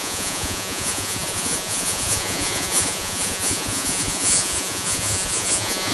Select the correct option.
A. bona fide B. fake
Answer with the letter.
B